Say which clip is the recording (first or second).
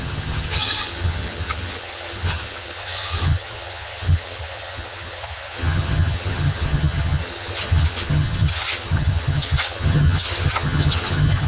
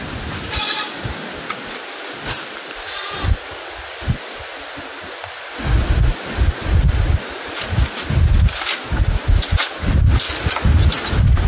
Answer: second